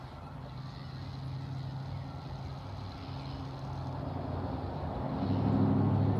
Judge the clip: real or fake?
real